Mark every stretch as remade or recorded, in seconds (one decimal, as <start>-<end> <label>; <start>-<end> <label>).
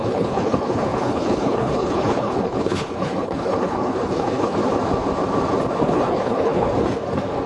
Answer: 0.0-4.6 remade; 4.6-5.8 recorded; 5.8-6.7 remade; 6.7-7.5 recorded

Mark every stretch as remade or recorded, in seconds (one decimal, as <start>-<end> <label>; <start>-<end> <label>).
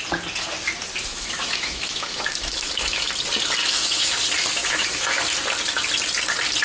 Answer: 0.0-1.1 recorded; 1.1-3.1 remade; 3.1-3.6 recorded; 3.6-4.1 remade; 4.1-4.6 recorded; 4.6-5.2 remade; 5.2-6.6 recorded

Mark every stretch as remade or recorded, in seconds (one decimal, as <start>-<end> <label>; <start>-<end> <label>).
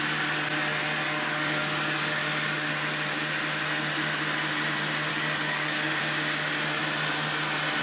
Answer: 0.0-1.0 recorded; 1.0-2.7 remade; 2.7-5.1 recorded; 5.1-6.0 remade; 6.0-7.8 recorded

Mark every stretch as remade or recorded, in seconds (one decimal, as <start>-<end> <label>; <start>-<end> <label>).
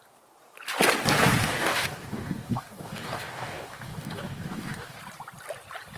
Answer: 0.0-1.4 recorded; 1.4-5.0 remade; 5.0-6.0 recorded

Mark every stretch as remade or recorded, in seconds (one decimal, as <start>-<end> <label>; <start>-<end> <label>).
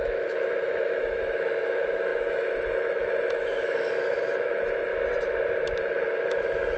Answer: 0.0-4.9 remade; 4.9-5.8 recorded; 5.8-6.8 remade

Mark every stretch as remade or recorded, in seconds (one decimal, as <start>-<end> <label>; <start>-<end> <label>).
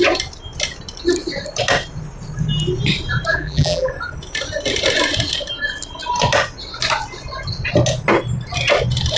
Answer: 0.0-3.3 recorded; 3.3-3.9 remade; 3.9-9.2 recorded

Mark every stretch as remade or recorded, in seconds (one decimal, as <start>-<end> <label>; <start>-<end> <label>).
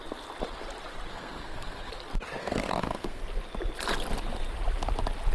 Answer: 0.0-1.1 recorded; 1.1-1.9 remade; 1.9-2.4 recorded; 2.4-3.2 remade; 3.2-5.3 recorded